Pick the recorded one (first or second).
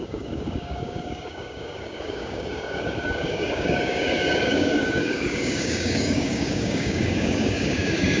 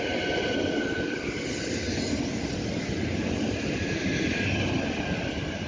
second